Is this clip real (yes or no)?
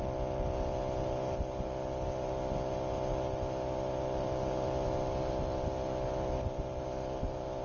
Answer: yes